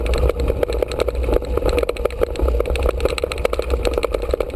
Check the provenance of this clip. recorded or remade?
recorded